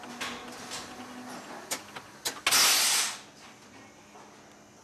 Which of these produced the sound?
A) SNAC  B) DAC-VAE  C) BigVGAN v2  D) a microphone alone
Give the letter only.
D